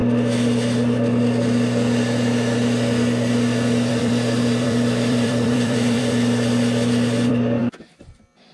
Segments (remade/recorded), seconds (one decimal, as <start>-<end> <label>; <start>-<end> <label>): 0.0-3.9 recorded; 3.9-7.6 remade; 7.6-8.5 recorded